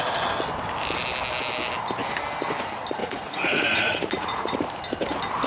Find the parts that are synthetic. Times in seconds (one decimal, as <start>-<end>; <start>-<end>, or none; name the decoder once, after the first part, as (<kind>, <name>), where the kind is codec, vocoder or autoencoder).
3.0-4.6 (vocoder, Vocos)